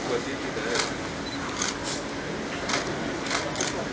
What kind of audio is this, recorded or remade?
recorded